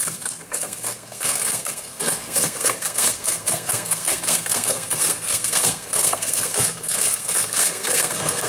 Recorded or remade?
remade